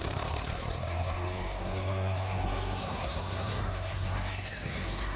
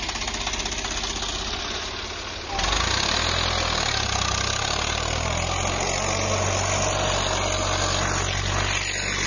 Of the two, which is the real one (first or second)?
second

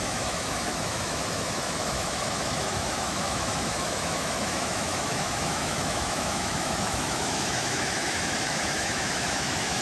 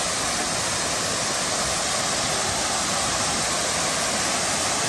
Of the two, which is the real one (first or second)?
second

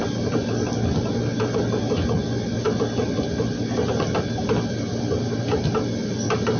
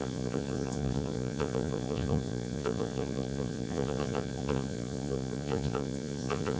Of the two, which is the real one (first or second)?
first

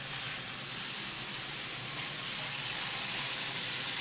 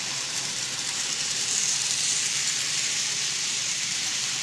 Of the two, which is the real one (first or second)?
first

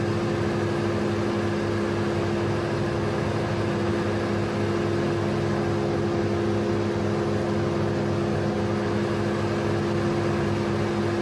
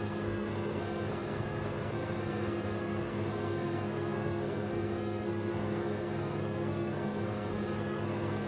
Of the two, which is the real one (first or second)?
first